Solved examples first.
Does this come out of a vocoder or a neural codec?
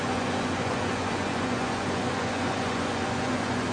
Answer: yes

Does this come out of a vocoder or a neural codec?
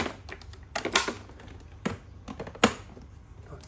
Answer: no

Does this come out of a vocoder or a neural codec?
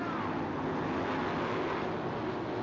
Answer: no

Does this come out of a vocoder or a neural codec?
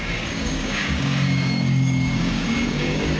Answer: yes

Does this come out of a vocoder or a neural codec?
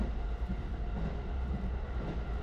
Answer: no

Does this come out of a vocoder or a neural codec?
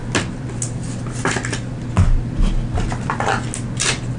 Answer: no